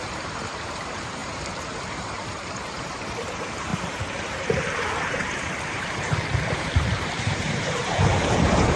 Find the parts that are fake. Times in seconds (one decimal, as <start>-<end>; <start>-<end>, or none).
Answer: 0.0-8.8